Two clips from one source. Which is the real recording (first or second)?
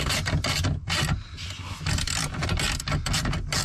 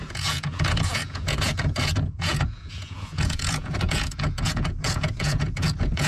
first